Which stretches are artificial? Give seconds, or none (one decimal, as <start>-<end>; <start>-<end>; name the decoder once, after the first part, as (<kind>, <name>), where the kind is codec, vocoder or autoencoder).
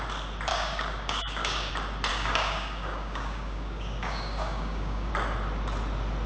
0.5-1.7 (codec, DAC); 2.1-5.1